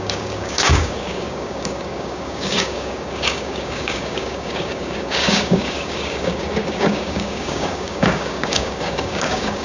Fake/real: fake